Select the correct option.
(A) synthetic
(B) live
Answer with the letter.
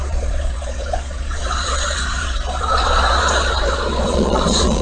A